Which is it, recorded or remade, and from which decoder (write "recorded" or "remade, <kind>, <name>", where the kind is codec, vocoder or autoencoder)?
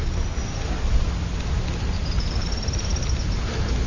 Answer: recorded